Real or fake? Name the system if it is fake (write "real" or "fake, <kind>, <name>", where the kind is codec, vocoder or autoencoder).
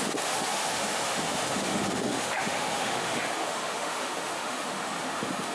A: fake, autoencoder, DAC-VAE